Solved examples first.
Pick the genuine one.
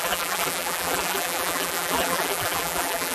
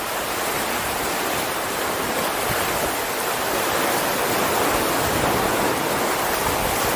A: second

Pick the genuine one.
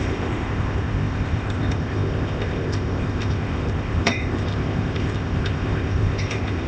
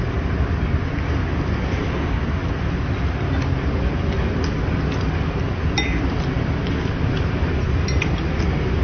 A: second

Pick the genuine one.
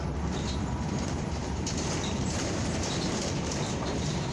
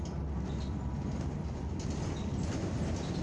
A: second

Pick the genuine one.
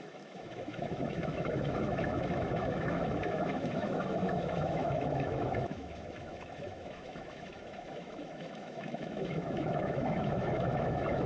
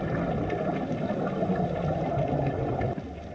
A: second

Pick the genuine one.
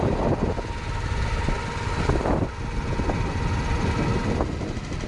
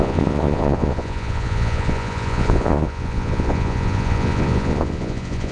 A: first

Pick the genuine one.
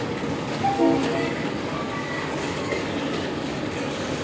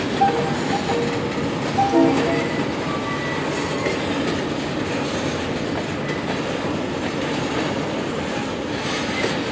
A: second